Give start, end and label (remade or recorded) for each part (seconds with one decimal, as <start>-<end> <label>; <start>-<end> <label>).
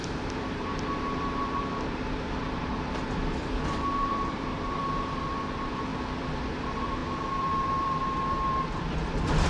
0.0-9.5 remade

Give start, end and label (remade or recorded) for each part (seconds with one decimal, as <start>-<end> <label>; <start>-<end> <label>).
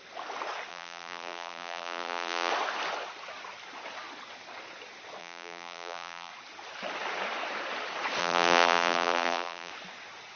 0.0-0.7 recorded; 0.7-2.5 remade; 2.5-5.2 recorded; 5.2-6.3 remade; 6.3-8.2 recorded; 8.2-9.7 remade; 9.7-10.4 recorded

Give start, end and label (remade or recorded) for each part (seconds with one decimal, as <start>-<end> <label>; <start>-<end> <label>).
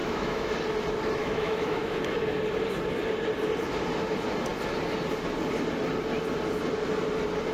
0.0-0.5 remade; 0.5-1.2 recorded; 1.2-2.0 remade; 2.0-7.5 recorded